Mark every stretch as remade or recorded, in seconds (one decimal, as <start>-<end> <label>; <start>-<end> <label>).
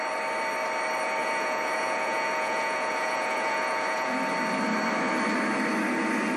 0.0-1.2 recorded; 1.2-4.1 remade; 4.1-6.4 recorded